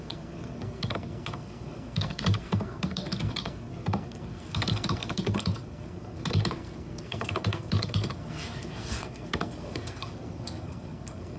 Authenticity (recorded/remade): remade